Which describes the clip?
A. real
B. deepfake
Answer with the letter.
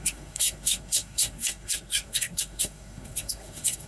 B